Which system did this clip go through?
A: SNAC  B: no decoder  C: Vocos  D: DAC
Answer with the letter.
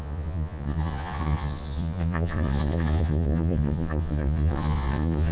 C